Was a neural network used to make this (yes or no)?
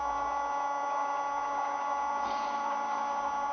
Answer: no